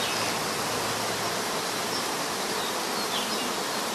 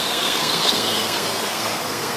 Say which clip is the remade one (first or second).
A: second